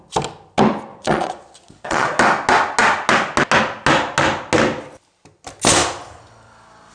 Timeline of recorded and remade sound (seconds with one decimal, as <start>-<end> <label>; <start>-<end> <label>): 0.0-0.9 recorded; 0.9-2.2 remade; 2.2-6.9 recorded